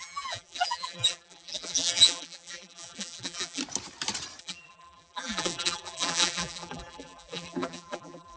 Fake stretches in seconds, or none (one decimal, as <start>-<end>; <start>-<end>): 0.0-3.6; 4.4-8.4